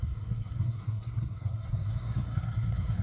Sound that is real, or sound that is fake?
fake